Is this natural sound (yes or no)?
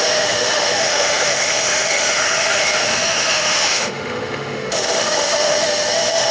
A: no